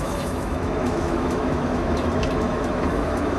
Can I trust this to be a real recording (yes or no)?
no